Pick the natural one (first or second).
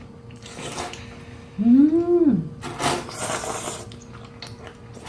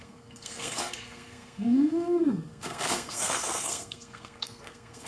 first